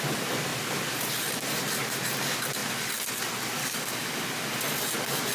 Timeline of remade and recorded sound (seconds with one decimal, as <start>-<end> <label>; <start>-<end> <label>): 0.0-3.6 recorded; 3.6-4.2 remade; 4.2-5.3 recorded